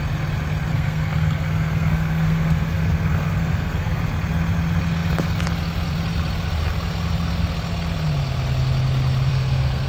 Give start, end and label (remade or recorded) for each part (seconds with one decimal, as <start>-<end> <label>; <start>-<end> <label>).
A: 0.0-0.7 recorded; 0.7-4.0 remade; 4.0-9.3 recorded; 9.3-9.9 remade